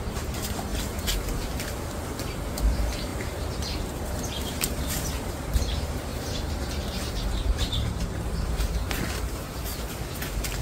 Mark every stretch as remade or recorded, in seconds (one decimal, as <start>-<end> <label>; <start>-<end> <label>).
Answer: 0.0-0.7 remade; 0.7-2.6 recorded; 2.6-9.7 remade; 9.7-10.6 recorded